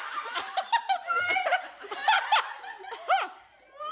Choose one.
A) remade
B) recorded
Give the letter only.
B